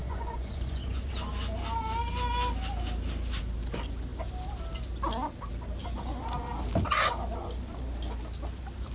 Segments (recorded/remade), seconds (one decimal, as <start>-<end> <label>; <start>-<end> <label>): 0.0-1.1 remade; 1.1-8.9 recorded